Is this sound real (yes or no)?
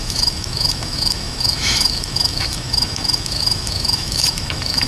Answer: no